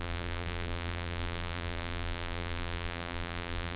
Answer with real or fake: fake